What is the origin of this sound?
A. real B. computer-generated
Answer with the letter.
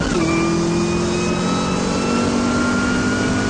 A